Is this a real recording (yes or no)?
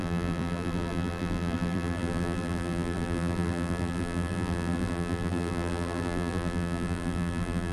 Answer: no